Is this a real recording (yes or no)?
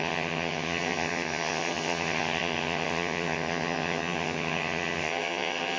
no